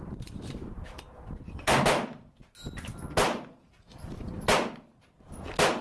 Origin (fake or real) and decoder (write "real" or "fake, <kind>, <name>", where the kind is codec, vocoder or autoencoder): real